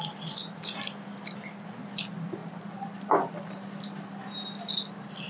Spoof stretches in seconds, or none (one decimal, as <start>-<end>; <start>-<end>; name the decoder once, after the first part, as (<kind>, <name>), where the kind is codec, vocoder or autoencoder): 2.4-4.5 (vocoder, BigVGAN v2)